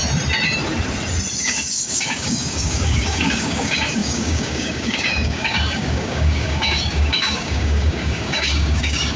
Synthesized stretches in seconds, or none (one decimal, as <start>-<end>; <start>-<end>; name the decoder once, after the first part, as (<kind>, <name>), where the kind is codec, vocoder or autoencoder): 1.4-9.2 (codec, DAC)